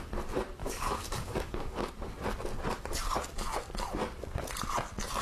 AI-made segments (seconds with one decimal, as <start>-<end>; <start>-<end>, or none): 0.6-1.9